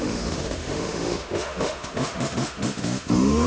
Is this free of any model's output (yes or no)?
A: no